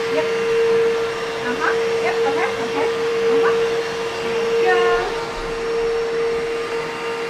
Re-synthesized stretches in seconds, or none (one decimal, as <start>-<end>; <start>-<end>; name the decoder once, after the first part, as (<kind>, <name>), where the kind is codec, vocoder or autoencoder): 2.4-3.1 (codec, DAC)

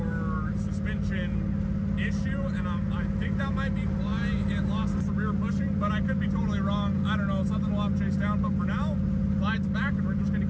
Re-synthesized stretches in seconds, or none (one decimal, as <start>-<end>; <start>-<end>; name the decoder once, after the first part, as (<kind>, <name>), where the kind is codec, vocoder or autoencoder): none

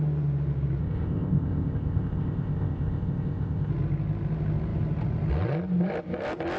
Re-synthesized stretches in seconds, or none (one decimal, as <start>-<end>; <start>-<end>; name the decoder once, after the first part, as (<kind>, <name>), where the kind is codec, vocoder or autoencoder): 0.8-3.7 (codec, ZipCodec)